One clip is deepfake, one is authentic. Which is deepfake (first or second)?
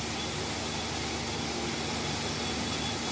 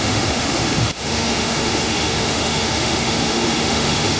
second